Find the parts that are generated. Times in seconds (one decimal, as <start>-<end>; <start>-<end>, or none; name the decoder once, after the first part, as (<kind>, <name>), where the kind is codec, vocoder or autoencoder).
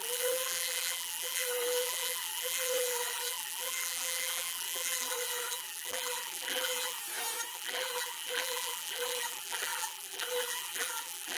0.0-7.0 (vocoder, BigVGAN v2); 7.5-11.4